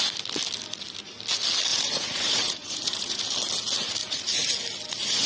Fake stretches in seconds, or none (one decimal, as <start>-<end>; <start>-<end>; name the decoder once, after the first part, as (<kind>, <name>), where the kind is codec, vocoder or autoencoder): 1.7-3.2 (vocoder, Vocos); 4.0-4.5